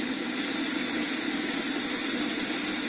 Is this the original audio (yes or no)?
yes